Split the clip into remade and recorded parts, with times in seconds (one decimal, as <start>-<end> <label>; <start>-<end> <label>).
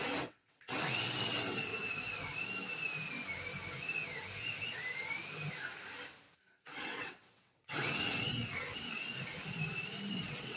0.0-1.7 remade; 1.7-6.6 recorded; 6.6-8.3 remade; 8.3-10.1 recorded; 10.1-10.6 remade